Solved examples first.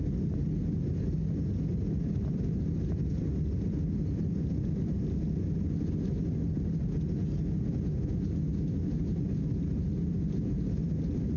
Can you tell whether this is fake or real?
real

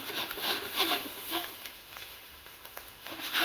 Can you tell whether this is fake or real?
fake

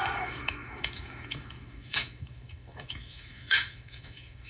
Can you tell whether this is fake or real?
fake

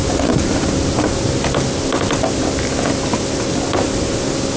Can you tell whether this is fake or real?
real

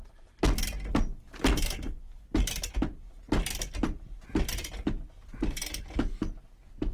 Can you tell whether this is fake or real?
real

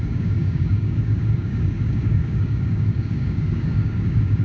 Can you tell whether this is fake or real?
fake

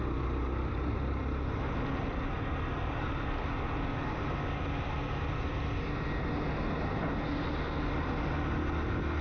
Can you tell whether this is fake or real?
real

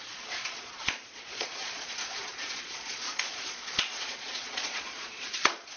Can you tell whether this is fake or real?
fake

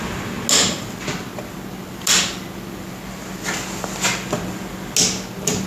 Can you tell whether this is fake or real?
real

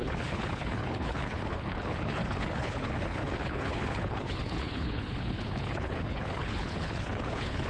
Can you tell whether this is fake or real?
fake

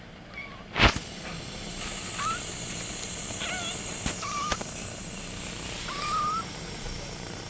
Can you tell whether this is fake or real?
real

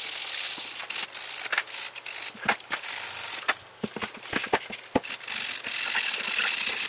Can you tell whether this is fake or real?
real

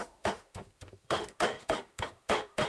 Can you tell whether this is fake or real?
fake